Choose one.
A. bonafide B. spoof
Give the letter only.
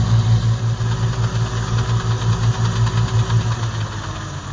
A